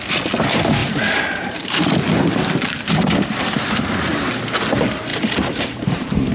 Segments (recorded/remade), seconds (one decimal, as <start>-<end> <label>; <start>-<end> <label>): 0.0-0.8 recorded; 0.8-4.3 remade; 4.3-5.1 recorded; 5.1-6.3 remade